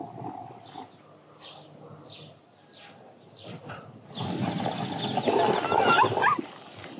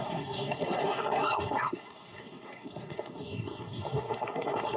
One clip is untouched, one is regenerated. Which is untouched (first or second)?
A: first